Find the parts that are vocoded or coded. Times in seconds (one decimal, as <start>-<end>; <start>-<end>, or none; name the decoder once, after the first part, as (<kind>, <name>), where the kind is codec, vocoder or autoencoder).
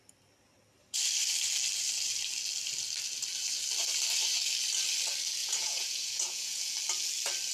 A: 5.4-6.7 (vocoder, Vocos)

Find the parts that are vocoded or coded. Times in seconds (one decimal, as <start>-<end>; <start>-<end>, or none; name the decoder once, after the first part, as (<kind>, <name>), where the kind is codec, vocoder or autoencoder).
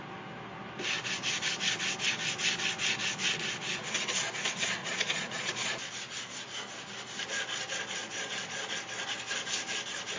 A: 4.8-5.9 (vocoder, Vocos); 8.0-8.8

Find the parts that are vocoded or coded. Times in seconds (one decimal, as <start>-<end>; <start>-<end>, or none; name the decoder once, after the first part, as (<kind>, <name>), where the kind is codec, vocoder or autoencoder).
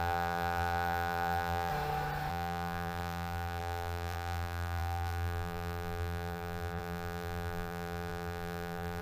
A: 0.0-1.7 (vocoder, BigVGAN v2); 2.3-9.0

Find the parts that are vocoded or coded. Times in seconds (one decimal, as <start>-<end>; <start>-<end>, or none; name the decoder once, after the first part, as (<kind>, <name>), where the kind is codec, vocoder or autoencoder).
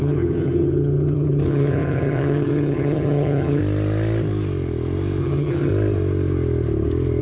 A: 0.0-3.6 (vocoder, HiFi-GAN); 5.2-5.7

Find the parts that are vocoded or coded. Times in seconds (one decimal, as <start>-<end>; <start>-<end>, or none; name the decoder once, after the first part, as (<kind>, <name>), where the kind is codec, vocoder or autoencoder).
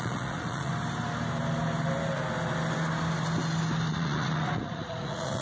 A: 0.0-0.7 (vocoder, Vocos); 3.9-5.4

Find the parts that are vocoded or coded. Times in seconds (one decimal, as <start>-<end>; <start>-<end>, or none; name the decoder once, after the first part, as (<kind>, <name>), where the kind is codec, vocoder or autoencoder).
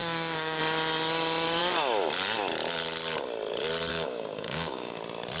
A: 0.0-0.6 (codec, DAC); 3.9-5.0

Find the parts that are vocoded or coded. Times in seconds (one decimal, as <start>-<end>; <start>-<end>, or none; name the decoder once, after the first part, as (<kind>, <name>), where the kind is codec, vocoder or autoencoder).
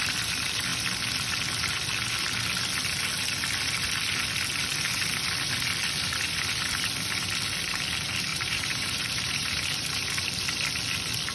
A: 8.3-10.1 (vocoder, BigVGAN v2)